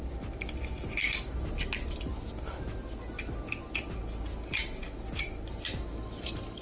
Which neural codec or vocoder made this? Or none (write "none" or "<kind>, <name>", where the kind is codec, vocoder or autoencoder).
none